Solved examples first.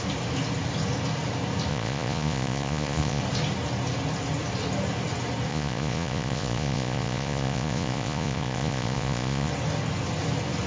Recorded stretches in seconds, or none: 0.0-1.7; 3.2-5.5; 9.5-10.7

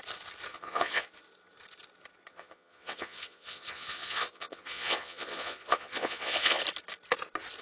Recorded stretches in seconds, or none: 0.0-0.5; 1.1-2.3; 6.6-7.6

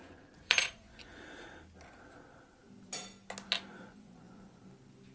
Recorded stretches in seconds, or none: 1.2-3.7; 4.6-5.1

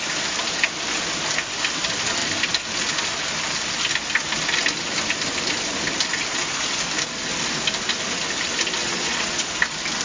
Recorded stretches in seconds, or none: 0.0-6.3; 6.8-8.8; 9.5-10.0

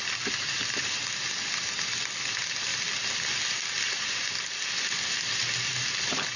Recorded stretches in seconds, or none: 0.0-6.4